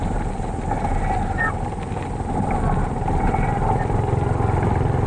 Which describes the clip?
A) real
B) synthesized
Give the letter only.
A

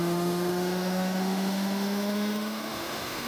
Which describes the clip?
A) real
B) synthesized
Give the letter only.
B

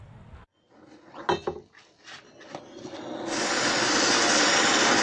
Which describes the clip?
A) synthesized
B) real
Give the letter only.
B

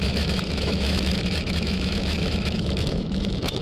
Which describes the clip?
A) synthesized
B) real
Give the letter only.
A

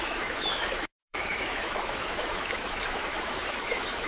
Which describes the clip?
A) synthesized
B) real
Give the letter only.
A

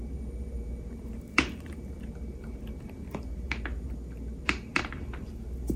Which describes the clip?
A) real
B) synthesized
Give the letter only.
B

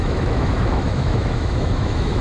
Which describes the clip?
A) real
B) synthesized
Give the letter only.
B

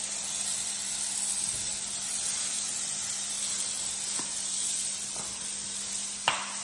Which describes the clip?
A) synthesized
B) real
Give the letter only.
B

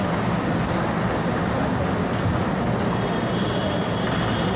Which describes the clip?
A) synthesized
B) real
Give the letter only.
B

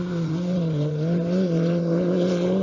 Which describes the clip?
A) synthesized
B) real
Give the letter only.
A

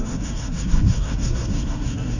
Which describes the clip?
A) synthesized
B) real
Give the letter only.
A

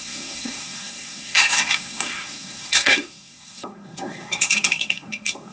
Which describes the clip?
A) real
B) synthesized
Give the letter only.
B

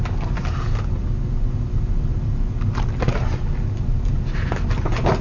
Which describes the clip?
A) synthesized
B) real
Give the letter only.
B